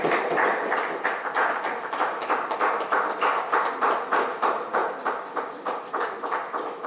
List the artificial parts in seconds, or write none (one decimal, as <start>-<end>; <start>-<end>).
none